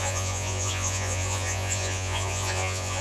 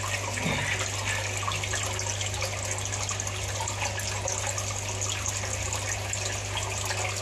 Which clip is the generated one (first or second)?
first